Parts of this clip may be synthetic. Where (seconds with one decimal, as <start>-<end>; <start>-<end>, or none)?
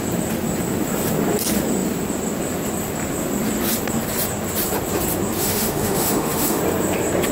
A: 5.4-6.6